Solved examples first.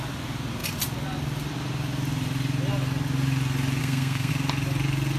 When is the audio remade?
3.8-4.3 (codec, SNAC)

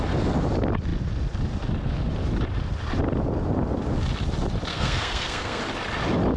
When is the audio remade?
4.7-5.6 (codec, SNAC)

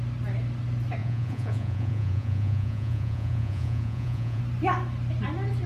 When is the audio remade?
1.0-4.4 (vocoder, Vocos)

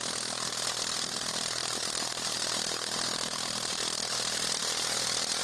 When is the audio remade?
none